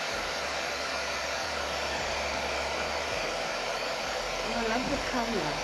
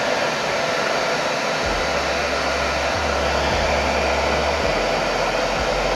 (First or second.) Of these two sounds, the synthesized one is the first